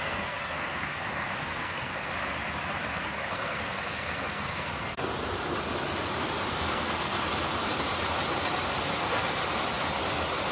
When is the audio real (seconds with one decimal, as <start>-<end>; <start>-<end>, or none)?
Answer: 2.1-2.7; 5.1-6.5; 7.3-9.0; 9.4-10.5